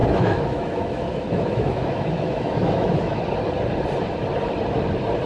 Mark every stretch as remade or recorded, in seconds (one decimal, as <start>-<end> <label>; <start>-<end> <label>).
0.0-3.2 remade; 3.2-5.3 recorded